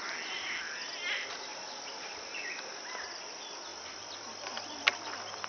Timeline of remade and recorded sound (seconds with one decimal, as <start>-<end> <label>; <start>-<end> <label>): 0.0-5.5 recorded

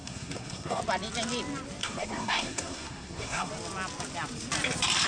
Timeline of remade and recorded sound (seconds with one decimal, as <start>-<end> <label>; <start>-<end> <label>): 0.0-0.8 remade; 0.8-1.8 recorded; 1.8-3.5 remade; 3.5-5.1 recorded

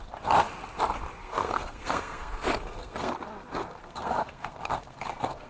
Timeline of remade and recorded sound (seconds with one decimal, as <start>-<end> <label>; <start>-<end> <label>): 0.0-1.2 recorded; 1.2-3.1 remade; 3.1-3.8 recorded; 3.8-5.5 remade

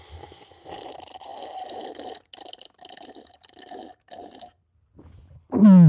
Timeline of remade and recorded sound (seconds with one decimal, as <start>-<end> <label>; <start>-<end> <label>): 0.0-5.9 recorded

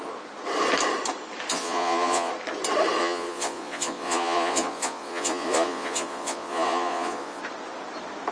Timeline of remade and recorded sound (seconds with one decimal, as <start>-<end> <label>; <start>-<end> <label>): 0.0-1.5 recorded; 1.5-2.3 remade; 2.3-3.0 recorded; 3.0-7.4 remade; 7.4-8.3 recorded

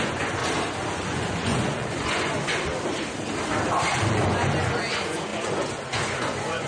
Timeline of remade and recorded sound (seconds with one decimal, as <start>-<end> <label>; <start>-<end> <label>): 0.0-0.4 remade; 0.4-0.9 recorded; 0.9-2.7 remade; 2.7-4.0 recorded; 4.0-6.7 remade

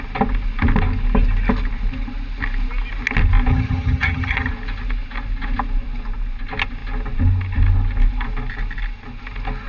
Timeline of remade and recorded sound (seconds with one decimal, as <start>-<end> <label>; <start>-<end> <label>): 0.0-3.5 recorded; 3.5-4.5 remade; 4.5-9.7 recorded